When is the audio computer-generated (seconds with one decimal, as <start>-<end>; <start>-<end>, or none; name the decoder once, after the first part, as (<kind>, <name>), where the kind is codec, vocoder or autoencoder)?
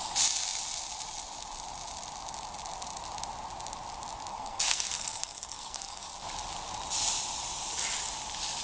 4.3-6.1 (codec, SNAC)